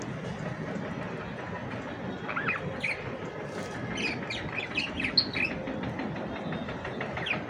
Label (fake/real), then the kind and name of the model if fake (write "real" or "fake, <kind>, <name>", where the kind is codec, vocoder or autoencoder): real